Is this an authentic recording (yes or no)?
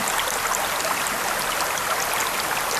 yes